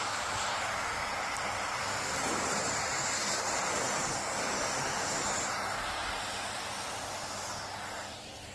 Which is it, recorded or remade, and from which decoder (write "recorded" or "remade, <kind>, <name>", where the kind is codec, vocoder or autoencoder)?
recorded